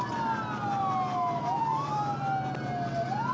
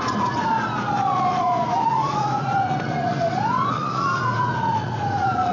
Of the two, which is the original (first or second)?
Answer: first